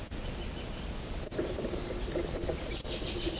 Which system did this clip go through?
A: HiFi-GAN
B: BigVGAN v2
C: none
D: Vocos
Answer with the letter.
C